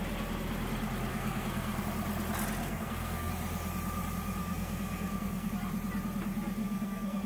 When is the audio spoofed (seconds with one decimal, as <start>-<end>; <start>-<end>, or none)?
1.1-1.8; 2.6-3.3; 4.4-5.5; 6.6-7.3